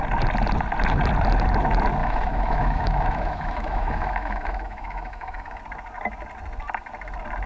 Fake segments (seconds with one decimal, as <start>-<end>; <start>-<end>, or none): 2.0-5.6